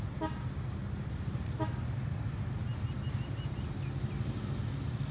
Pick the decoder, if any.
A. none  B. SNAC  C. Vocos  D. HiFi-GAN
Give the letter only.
A